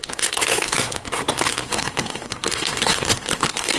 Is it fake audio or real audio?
fake